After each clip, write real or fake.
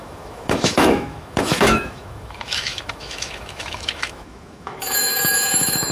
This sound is fake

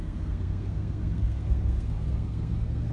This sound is fake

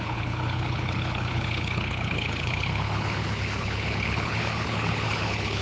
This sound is fake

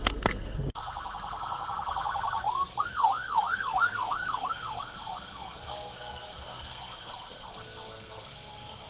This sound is fake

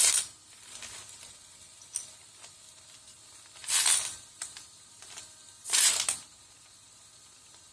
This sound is real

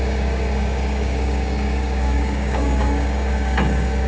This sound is fake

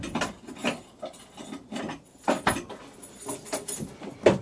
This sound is real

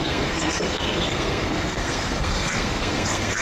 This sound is fake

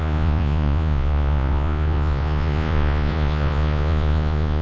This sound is fake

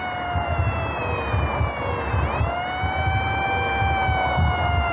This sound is fake